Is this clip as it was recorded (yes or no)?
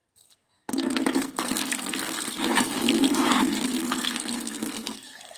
no